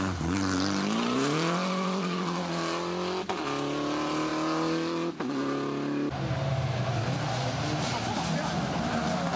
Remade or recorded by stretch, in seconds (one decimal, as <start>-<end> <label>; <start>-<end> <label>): 0.0-9.4 recorded